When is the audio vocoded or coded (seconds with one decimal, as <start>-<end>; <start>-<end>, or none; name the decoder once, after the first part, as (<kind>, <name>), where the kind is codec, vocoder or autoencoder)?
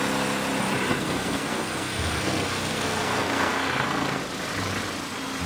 0.9-4.2 (codec, SNAC)